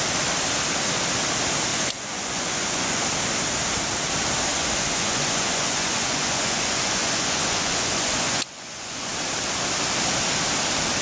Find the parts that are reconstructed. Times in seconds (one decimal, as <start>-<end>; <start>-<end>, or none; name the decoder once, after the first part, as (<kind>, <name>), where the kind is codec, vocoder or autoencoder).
1.7-3.0 (vocoder, Vocos); 4.5-9.1